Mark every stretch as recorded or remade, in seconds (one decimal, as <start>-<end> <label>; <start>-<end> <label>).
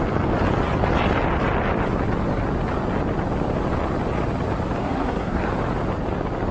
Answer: 0.0-4.8 recorded; 4.8-5.4 remade; 5.4-6.5 recorded